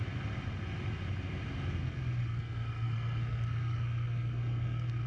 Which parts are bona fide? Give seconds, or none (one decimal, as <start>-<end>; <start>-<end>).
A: 0.0-1.8